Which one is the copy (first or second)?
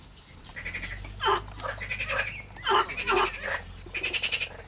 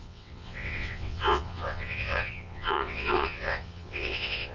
second